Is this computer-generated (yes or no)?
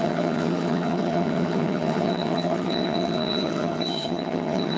yes